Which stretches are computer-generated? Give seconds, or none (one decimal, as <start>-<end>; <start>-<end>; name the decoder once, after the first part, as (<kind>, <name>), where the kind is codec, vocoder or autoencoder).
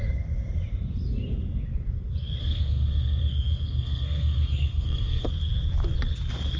2.4-5.3 (codec, SNAC)